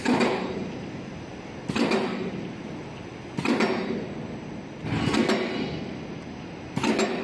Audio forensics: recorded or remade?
recorded